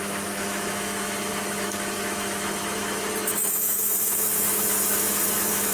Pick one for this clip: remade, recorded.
remade